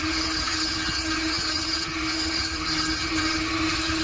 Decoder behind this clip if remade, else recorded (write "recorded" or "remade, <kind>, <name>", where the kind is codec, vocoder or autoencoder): remade, vocoder, HiFi-GAN